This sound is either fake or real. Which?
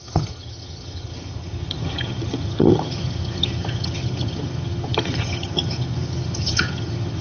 fake